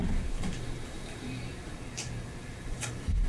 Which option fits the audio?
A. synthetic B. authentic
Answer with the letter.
A